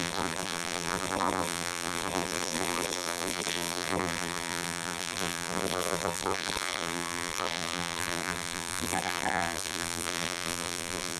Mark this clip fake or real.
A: fake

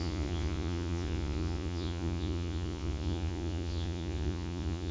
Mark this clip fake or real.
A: fake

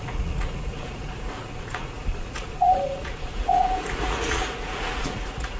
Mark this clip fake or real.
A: fake